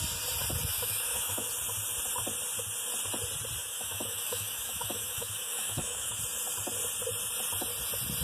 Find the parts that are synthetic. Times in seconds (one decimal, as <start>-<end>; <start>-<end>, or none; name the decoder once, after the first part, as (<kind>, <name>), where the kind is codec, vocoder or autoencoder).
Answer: 0.7-1.5 (autoencoder, DAC-VAE); 3.6-6.2